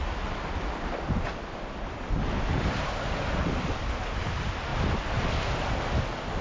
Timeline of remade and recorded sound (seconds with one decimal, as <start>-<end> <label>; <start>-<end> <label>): 0.0-6.4 recorded